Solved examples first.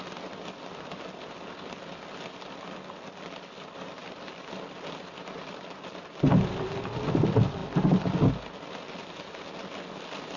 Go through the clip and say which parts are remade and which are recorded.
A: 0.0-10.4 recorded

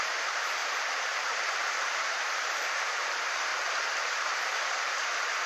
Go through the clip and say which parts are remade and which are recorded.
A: 0.0-3.5 remade; 3.5-4.2 recorded; 4.2-5.5 remade

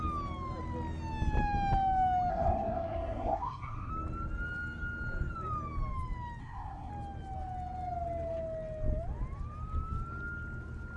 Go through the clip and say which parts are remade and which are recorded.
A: 0.0-2.3 recorded; 2.3-3.9 remade; 3.9-6.4 recorded; 6.4-6.9 remade; 6.9-11.0 recorded